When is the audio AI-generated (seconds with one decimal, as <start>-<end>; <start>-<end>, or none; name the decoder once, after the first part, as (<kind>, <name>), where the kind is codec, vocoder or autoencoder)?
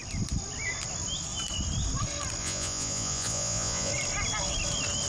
2.4-3.9 (vocoder, Vocos)